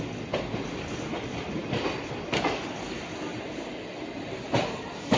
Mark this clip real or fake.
real